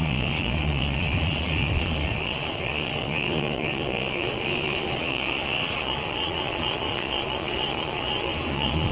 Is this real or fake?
fake